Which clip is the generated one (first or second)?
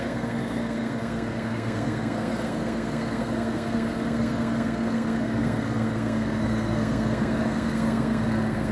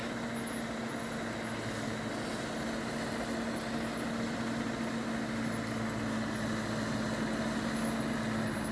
first